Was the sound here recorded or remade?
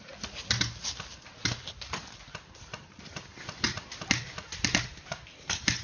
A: recorded